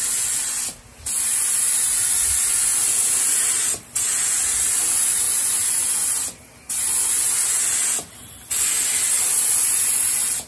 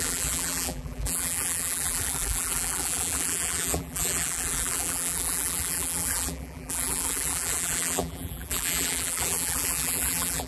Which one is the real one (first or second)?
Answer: first